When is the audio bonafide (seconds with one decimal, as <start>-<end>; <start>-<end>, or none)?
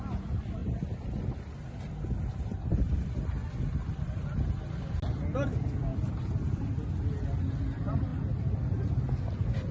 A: 0.0-9.7